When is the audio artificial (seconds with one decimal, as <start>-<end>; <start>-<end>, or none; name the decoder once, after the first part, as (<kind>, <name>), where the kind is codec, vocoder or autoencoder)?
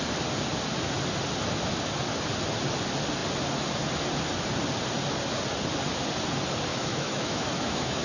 6.7-8.0 (autoencoder, DAC-VAE)